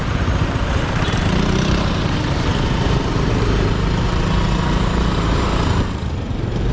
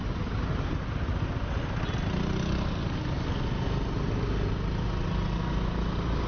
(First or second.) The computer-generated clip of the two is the first